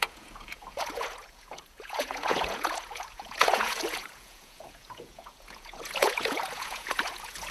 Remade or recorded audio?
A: remade